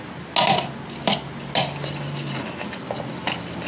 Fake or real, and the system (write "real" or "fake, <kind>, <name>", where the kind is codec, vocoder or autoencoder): real